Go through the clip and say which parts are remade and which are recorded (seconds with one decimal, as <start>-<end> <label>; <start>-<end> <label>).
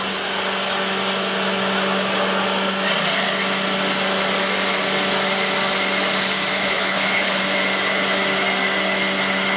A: 0.0-6.6 recorded; 6.6-7.4 remade; 7.4-9.6 recorded